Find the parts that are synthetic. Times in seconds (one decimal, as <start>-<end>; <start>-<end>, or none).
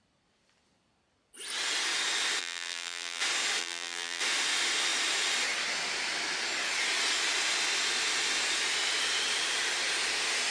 2.4-3.2; 3.6-4.2